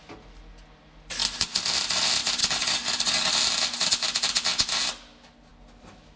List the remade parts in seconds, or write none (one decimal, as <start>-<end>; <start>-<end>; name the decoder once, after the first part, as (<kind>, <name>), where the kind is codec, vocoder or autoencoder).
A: 2.4-3.3 (codec, DAC)

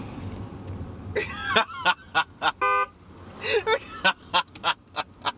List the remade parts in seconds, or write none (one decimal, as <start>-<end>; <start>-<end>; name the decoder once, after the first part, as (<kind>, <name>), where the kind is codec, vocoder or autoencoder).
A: none

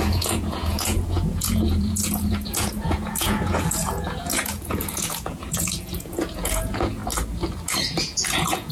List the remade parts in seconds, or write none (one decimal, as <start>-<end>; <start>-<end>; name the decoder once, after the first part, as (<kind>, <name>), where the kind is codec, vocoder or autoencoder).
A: 0.0-7.0 (vocoder, Vocos); 8.0-8.7

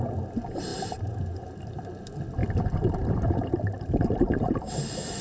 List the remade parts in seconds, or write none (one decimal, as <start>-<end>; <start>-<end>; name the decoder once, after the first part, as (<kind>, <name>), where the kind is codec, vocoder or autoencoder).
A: 0.7-1.8 (vocoder, BigVGAN v2); 2.4-5.2